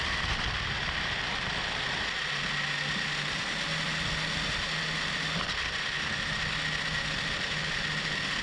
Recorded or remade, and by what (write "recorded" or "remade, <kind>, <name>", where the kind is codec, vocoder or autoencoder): recorded